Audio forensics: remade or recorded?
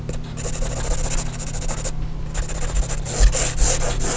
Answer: recorded